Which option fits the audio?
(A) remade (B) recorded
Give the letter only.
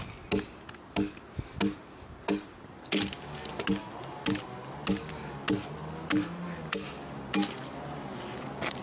B